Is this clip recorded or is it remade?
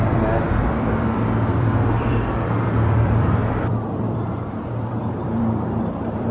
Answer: remade